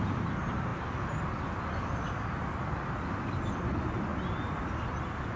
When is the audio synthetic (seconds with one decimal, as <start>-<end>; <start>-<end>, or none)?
none